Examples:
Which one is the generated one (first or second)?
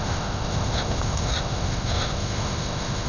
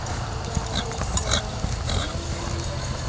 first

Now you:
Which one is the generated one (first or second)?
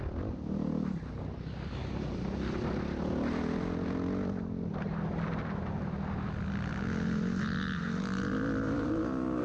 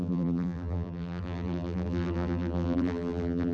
second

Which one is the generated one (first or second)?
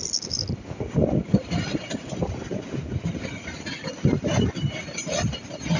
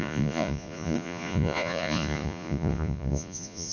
second